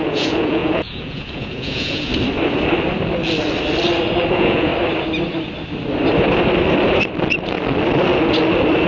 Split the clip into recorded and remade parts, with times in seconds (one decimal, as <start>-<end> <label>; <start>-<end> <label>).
0.0-2.1 remade; 2.1-4.3 recorded; 4.3-4.7 remade; 4.7-8.9 recorded